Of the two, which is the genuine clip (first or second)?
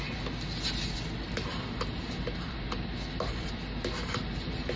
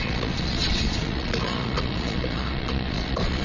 first